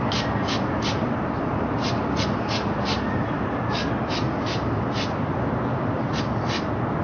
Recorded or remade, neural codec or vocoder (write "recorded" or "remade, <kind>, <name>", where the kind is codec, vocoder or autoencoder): recorded